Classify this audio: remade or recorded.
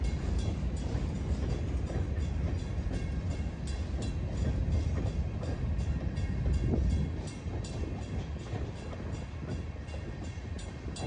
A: recorded